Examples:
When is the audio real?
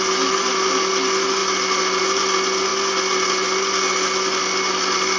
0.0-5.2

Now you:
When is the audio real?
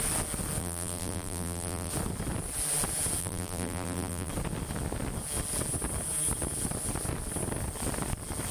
0.0-0.6; 1.9-3.2; 4.3-8.5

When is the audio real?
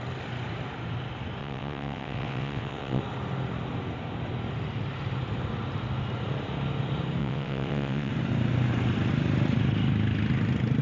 0.0-1.4; 3.0-7.2; 8.1-10.8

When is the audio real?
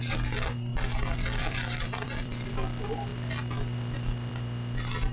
0.0-0.7; 2.5-5.1